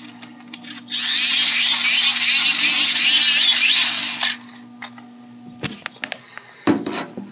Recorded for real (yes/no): yes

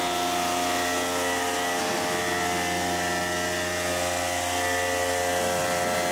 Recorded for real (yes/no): yes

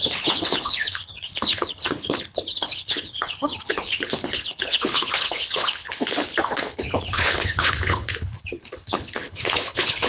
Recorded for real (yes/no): no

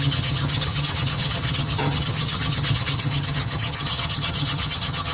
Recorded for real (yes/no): no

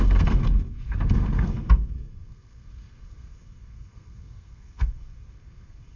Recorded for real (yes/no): no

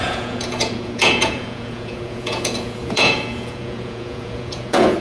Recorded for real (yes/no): no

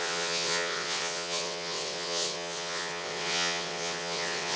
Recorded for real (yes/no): no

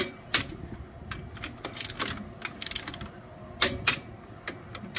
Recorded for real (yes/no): yes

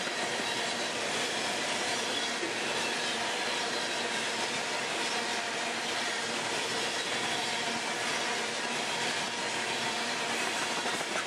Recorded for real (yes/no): no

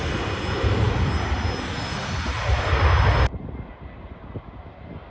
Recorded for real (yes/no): yes